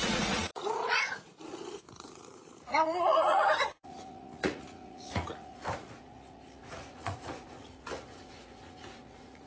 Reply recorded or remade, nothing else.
remade